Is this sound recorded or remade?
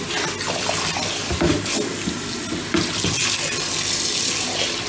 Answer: recorded